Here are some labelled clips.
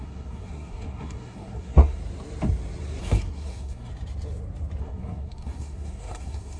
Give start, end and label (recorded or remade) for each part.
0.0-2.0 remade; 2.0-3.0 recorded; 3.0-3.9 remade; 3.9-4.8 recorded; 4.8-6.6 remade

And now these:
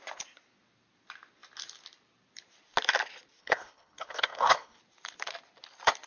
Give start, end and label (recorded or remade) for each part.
0.0-3.4 recorded; 3.4-4.8 remade; 4.8-6.1 recorded

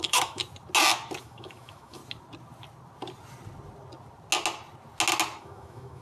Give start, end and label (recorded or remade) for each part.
0.0-0.4 remade; 0.4-1.2 recorded; 1.2-2.0 remade; 2.0-5.4 recorded; 5.4-6.0 remade

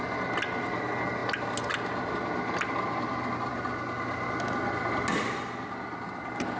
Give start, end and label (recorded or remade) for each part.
0.0-6.6 recorded